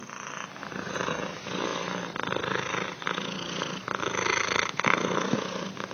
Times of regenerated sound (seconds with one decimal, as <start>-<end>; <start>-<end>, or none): none